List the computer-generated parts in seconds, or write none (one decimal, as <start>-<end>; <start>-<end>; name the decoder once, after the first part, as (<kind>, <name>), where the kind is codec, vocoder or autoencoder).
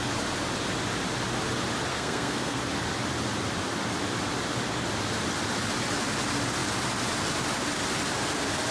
1.9-2.6 (codec, SNAC)